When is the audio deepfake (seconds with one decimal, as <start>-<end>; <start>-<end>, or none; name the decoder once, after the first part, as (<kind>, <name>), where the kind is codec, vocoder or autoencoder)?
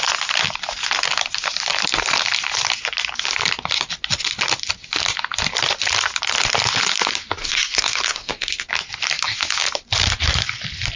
7.4-8.7 (codec, SNAC)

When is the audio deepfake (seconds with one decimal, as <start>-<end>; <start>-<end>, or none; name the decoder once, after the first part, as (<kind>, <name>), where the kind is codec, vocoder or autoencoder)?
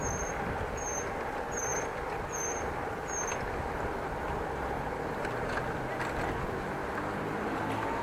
none